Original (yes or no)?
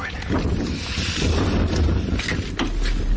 yes